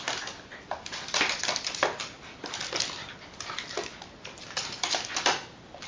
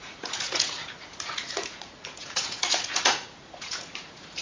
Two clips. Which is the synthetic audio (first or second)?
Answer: second